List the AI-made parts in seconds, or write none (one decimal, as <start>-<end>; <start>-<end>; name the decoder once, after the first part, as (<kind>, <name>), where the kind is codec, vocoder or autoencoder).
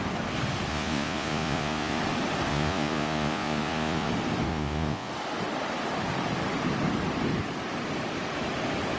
0.7-2.0 (vocoder, Vocos); 2.5-4.1; 4.5-5.1